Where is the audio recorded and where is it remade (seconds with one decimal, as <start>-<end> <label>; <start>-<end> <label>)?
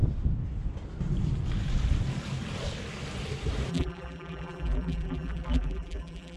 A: 0.0-3.7 recorded; 3.7-6.4 remade